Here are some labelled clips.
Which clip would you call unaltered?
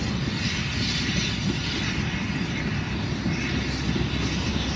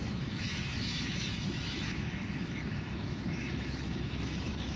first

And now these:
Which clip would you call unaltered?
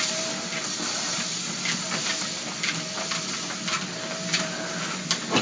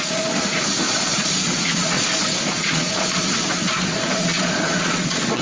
first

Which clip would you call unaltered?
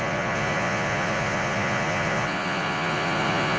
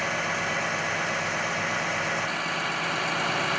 second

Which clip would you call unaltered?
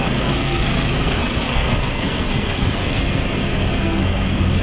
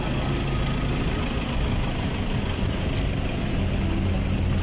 second